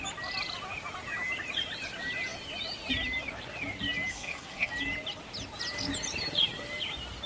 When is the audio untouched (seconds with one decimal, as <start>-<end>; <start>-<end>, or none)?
0.0-4.1; 4.7-7.3